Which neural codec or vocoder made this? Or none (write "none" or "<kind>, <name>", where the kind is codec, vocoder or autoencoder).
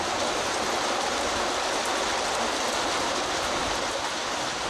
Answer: none